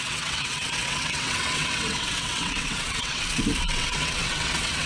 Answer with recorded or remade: remade